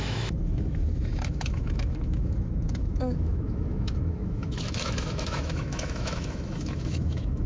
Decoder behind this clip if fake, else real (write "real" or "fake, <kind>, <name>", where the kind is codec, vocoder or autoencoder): fake, autoencoder, DAC-VAE